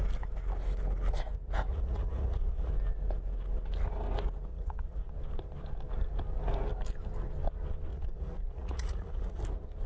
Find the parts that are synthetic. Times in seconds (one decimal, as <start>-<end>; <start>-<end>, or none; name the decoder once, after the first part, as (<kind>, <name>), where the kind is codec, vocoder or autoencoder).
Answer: 1.7-2.7 (vocoder, Vocos); 4.5-5.1; 7.9-9.4